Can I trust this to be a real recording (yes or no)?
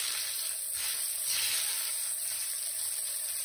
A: yes